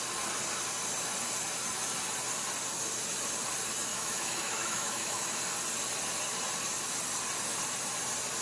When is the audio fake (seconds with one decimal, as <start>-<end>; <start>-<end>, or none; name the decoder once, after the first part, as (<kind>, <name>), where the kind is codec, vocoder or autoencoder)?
3.9-5.4 (autoencoder, DAC-VAE)